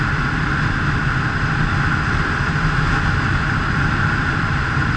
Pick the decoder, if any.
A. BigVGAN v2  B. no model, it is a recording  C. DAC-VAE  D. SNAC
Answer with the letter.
B